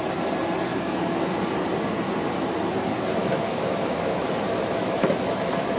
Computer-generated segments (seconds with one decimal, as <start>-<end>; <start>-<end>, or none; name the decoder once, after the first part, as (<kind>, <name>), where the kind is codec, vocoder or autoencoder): 0.7-1.2 (autoencoder, DAC-VAE); 3.2-5.8